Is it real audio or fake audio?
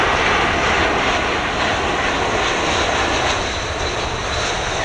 real